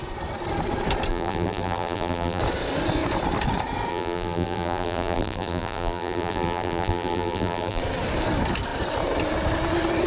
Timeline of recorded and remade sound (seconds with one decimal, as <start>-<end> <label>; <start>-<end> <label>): 0.0-1.1 recorded; 1.1-2.4 remade; 2.4-3.9 recorded; 3.9-7.8 remade; 7.8-10.1 recorded